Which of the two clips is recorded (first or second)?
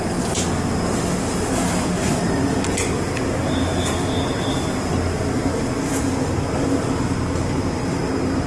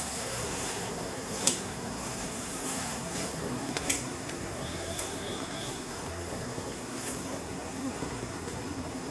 first